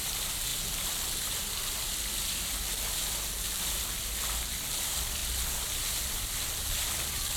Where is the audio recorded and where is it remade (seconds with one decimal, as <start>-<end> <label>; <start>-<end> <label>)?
0.0-7.4 recorded